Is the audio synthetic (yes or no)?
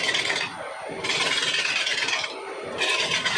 no